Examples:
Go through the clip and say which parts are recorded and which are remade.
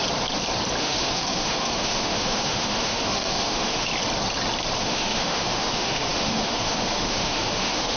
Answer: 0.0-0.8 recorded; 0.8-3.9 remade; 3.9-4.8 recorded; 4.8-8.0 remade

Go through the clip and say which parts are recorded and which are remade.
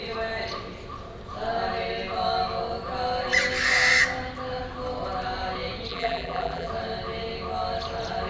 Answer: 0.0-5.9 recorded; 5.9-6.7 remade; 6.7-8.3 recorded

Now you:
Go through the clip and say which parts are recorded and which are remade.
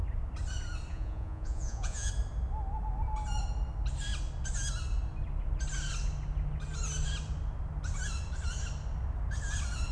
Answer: 0.0-0.9 recorded; 0.9-2.1 remade; 2.1-9.9 recorded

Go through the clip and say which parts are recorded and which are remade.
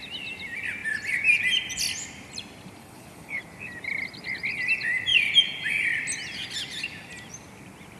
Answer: 0.0-2.8 recorded; 2.8-3.4 remade; 3.4-8.0 recorded